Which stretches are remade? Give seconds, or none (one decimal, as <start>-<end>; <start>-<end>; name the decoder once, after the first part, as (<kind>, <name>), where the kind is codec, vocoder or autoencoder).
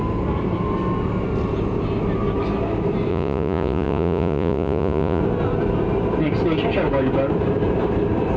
3.1-5.2 (vocoder, Vocos)